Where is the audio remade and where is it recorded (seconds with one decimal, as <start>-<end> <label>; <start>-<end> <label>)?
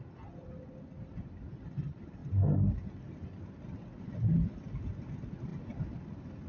0.0-2.2 recorded; 2.2-4.0 remade; 4.0-6.5 recorded